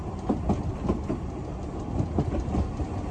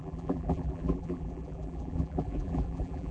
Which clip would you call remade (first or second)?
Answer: second